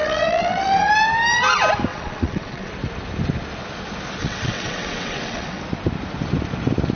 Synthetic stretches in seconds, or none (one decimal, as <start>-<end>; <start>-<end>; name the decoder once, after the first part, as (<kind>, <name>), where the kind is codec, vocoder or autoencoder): 0.0-0.9 (vocoder, WaveNeXt); 1.9-2.7; 4.2-5.6